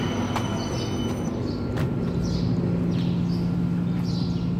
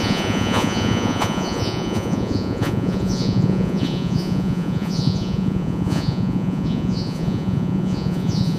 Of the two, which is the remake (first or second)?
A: second